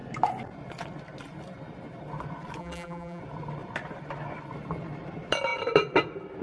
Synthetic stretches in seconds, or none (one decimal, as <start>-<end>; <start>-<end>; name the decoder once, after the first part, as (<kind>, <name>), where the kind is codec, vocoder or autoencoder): 2.6-3.2 (vocoder, BigVGAN v2)

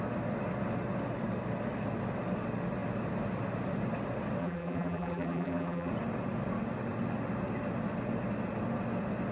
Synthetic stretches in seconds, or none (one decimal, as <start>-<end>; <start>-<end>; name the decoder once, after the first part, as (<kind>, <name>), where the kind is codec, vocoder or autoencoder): 4.4-5.9 (vocoder, BigVGAN v2)

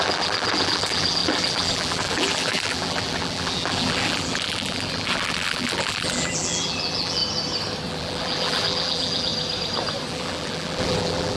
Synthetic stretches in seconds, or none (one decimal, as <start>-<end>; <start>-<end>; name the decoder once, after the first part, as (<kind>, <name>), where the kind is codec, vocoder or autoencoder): 0.0-7.2 (vocoder, BigVGAN v2); 7.9-9.3; 10.1-11.4